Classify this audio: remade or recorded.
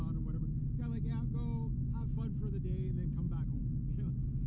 recorded